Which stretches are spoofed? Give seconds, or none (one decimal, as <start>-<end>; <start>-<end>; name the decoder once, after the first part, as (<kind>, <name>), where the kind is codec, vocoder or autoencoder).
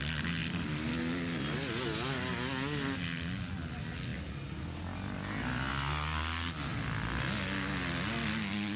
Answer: 0.4-1.0 (vocoder, BigVGAN v2)